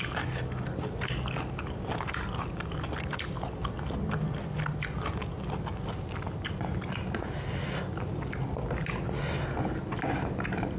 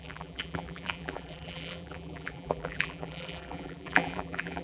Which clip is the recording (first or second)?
first